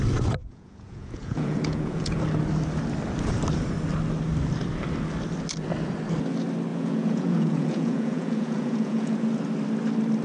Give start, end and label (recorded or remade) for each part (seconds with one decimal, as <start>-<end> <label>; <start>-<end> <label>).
0.0-0.4 recorded; 0.4-2.2 remade; 2.2-6.7 recorded; 6.7-9.2 remade; 9.2-10.2 recorded